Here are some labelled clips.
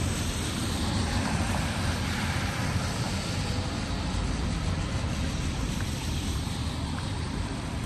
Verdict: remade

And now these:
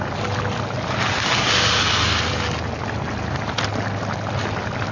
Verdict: recorded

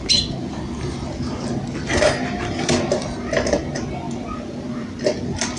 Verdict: recorded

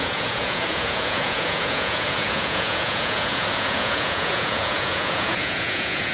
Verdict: remade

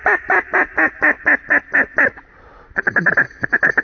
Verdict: recorded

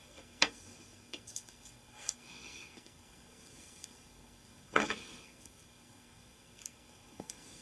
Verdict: remade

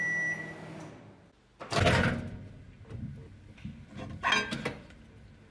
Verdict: recorded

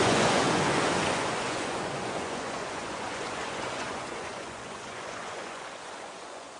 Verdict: remade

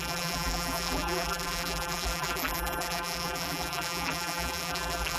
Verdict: remade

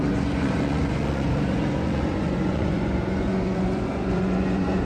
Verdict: remade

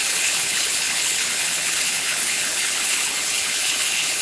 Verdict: remade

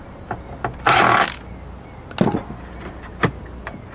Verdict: recorded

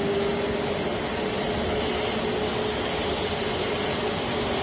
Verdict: recorded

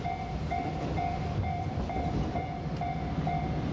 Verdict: recorded